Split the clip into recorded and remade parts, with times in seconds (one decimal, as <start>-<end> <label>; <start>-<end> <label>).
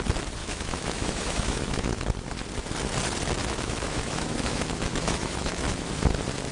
0.0-0.4 recorded; 0.4-2.0 remade; 2.0-3.4 recorded; 3.4-5.9 remade; 5.9-6.5 recorded